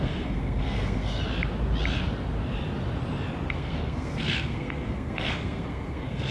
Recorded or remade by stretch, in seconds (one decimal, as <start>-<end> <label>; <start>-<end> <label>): 0.0-1.2 remade; 1.2-3.5 recorded; 3.5-6.3 remade